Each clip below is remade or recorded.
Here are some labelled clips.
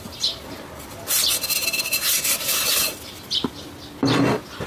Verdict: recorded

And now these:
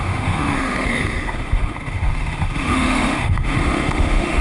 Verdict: remade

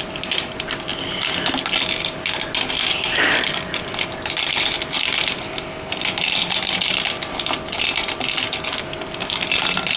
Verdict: recorded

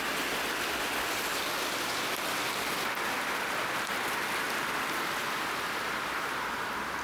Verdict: recorded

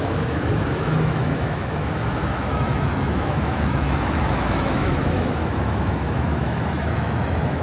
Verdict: remade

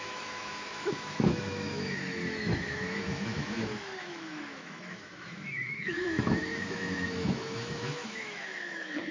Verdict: remade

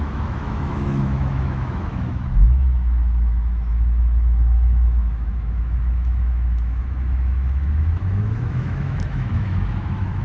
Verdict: remade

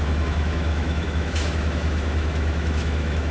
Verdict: remade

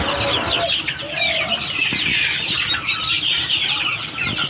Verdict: recorded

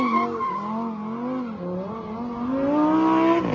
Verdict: recorded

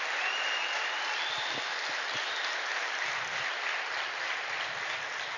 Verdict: recorded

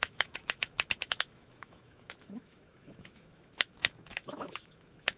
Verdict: remade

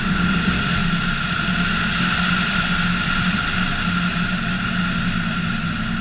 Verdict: recorded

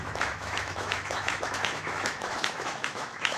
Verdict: remade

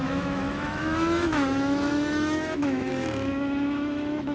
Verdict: remade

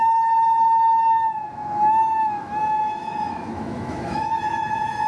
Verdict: remade